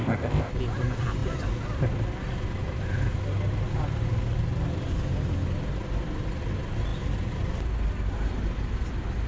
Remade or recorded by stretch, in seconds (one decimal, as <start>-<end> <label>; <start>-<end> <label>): 0.0-0.5 remade; 0.5-9.3 recorded